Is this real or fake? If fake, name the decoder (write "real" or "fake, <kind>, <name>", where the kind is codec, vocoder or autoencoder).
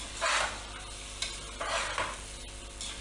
real